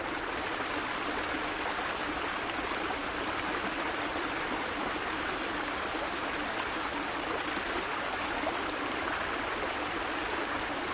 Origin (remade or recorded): recorded